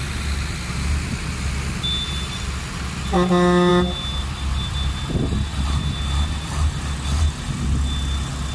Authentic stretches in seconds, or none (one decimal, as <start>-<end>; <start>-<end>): 0.0-8.5

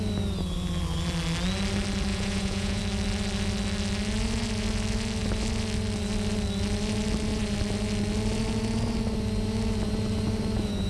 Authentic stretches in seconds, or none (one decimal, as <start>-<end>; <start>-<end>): 0.0-2.1; 2.8-10.9

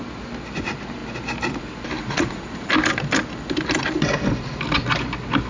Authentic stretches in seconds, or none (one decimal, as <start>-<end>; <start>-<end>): 0.0-2.0; 2.7-5.5

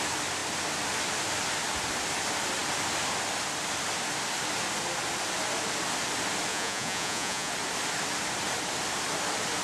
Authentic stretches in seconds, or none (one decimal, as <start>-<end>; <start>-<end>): 0.0-6.5; 7.5-9.6

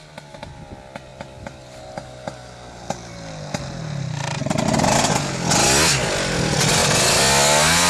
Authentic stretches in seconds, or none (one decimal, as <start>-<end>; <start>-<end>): 0.0-7.9